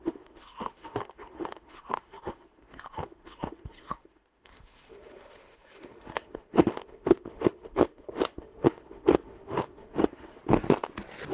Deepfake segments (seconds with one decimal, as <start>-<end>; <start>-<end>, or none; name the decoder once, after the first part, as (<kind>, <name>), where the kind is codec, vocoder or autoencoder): 0.0-10.4 (autoencoder, DAC-VAE)